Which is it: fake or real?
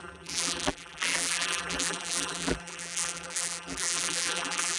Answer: fake